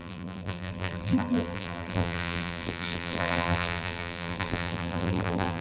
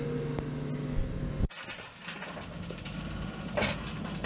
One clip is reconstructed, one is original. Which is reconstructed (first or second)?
first